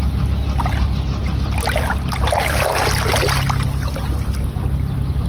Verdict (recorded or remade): recorded